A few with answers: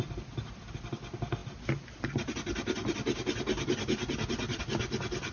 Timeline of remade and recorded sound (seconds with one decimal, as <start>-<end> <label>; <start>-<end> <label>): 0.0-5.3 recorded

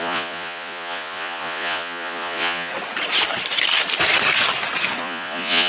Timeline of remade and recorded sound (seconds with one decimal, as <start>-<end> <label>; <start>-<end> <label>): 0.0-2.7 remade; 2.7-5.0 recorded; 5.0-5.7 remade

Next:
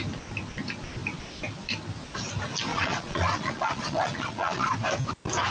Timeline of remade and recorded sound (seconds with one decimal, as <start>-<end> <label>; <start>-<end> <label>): 0.0-2.7 recorded; 2.7-4.7 remade; 4.7-5.5 recorded

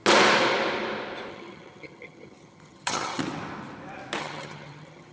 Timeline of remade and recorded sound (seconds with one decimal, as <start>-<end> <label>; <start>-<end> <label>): 0.0-1.3 recorded; 1.3-3.2 remade; 3.2-4.2 recorded; 4.2-5.1 remade

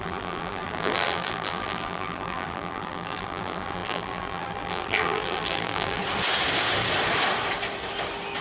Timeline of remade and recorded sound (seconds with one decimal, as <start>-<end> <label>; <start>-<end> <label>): 0.0-6.0 remade; 6.0-8.4 recorded

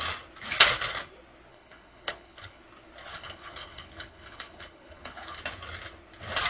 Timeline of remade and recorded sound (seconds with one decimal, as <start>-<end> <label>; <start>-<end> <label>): 0.0-1.5 recorded; 1.5-2.6 remade; 2.6-3.1 recorded; 3.1-5.4 remade; 5.4-6.5 recorded